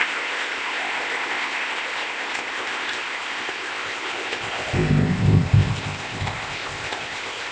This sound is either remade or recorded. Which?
remade